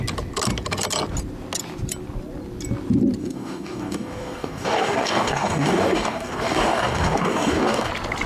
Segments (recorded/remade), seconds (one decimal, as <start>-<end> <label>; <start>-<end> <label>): 0.0-3.2 recorded; 3.2-7.9 remade; 7.9-8.3 recorded